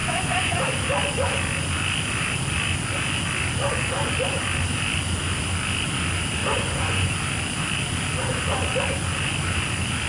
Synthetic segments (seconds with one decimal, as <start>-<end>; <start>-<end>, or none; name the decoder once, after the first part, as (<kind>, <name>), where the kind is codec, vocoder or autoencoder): 0.0-0.6 (vocoder, Vocos); 6.4-7.1